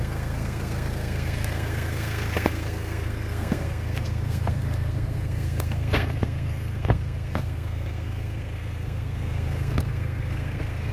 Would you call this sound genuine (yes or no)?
no